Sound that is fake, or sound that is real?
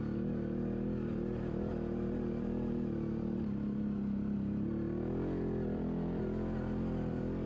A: real